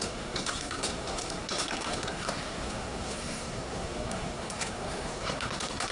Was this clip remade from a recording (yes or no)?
yes